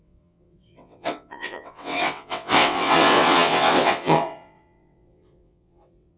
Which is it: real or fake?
fake